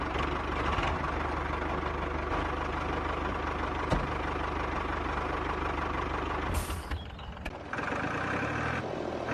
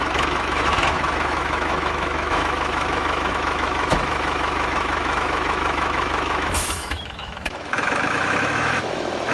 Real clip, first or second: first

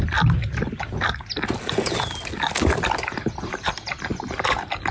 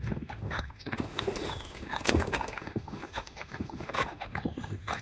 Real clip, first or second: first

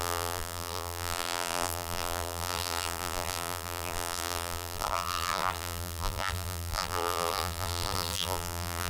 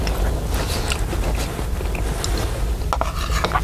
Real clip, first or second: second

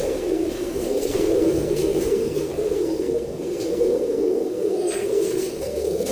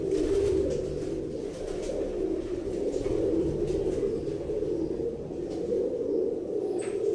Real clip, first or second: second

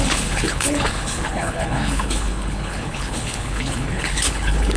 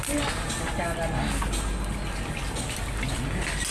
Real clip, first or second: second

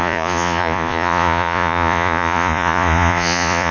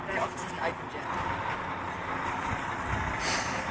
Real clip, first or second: second